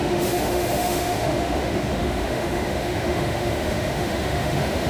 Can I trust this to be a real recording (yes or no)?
no